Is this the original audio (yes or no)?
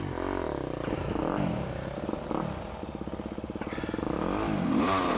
yes